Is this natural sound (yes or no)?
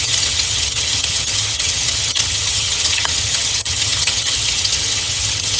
no